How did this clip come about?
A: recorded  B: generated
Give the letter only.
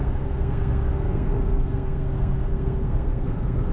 B